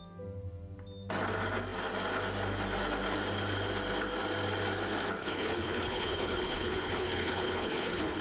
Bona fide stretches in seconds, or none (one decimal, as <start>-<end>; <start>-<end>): 0.0-5.2